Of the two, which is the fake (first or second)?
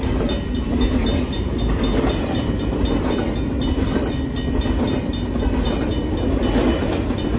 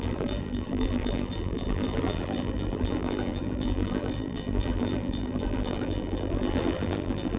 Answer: second